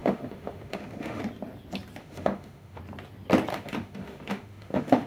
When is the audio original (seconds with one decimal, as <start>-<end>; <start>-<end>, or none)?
1.2-2.0; 2.8-3.5